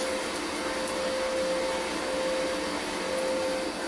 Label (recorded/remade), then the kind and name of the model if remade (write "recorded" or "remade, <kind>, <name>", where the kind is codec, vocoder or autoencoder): recorded